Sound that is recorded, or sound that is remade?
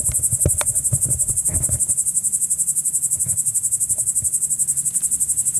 recorded